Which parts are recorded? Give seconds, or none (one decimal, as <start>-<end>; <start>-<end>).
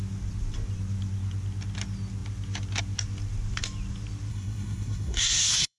0.0-4.3